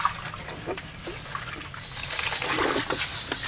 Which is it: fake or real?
real